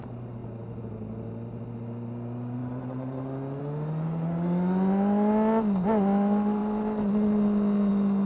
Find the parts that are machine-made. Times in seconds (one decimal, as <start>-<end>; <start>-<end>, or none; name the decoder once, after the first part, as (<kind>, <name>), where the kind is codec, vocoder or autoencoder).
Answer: none